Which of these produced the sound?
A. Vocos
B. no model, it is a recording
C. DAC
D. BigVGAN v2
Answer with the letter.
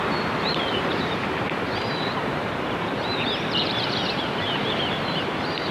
D